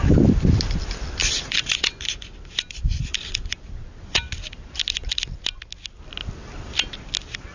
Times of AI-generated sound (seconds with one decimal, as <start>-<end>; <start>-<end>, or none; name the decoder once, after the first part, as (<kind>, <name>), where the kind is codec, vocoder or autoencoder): 1.2-3.7 (vocoder, BigVGAN v2)